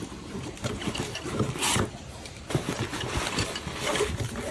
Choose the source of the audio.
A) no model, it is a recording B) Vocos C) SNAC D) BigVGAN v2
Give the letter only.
D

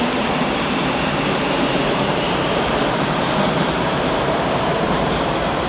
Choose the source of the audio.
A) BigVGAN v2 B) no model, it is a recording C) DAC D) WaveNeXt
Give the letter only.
A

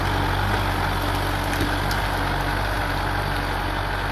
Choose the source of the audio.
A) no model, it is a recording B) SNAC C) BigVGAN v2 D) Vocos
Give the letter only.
A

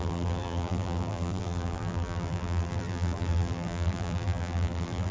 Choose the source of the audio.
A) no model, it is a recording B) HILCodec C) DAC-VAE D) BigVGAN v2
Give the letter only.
D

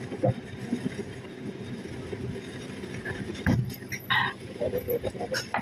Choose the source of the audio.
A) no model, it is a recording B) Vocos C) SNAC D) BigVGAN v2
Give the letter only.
D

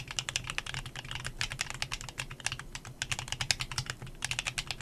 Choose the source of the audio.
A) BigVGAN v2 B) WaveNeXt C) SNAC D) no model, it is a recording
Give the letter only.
D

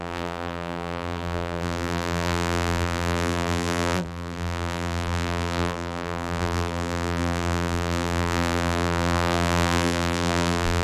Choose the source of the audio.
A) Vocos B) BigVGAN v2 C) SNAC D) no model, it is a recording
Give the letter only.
B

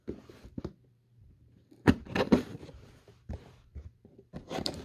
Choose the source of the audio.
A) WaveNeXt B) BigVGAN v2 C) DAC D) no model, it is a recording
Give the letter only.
B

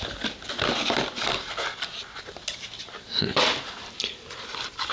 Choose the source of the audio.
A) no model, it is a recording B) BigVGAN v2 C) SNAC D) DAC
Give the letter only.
A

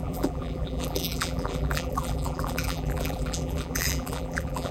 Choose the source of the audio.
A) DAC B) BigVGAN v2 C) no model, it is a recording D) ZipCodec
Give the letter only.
B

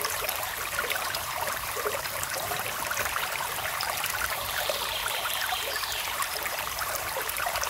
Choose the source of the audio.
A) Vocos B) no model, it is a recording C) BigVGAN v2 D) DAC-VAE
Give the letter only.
C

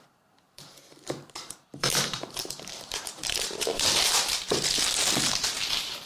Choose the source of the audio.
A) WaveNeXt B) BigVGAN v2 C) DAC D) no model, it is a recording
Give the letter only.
B